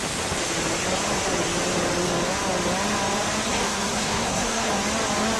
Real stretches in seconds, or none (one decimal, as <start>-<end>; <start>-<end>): 0.0-3.5; 4.7-5.4